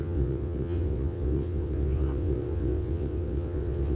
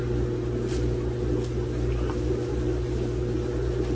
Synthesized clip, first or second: first